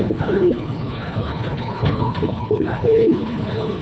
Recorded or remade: remade